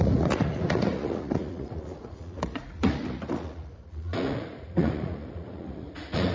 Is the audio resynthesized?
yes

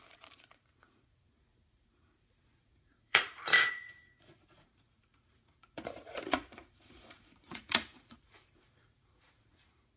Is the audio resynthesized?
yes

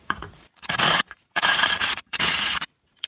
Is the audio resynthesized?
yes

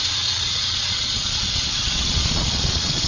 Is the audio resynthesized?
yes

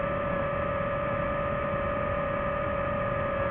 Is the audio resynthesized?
no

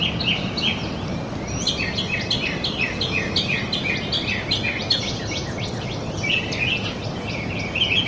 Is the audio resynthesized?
no